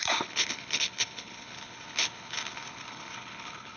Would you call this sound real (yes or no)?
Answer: no